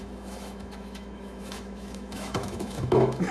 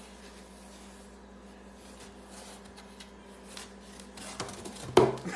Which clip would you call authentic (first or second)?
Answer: second